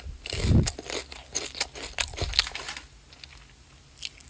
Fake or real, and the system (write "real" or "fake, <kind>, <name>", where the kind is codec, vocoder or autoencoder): real